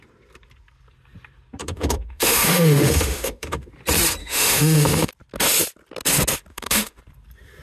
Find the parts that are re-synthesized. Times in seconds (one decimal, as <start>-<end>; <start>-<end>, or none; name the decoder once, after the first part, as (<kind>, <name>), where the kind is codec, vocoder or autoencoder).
1.6-3.7 (autoencoder, DAC-VAE); 4.2-5.1; 6.5-7.0